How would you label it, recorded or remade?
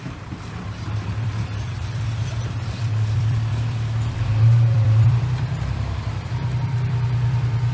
remade